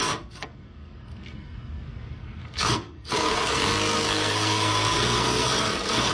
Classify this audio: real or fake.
fake